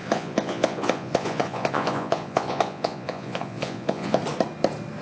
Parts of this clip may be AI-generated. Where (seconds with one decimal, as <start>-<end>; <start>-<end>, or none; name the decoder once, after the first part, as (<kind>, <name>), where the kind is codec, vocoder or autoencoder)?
0.0-4.2 (vocoder, Vocos)